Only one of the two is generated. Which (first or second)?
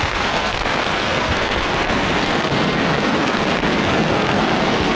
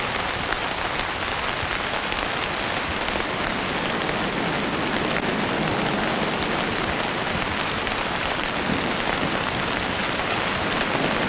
first